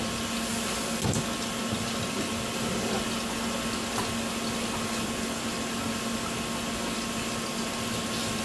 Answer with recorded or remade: recorded